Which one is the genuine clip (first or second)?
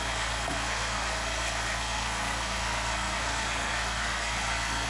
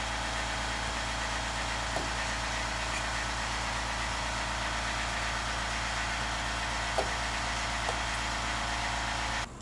second